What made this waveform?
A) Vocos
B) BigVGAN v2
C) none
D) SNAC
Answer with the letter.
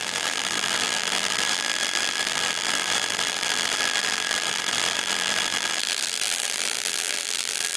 B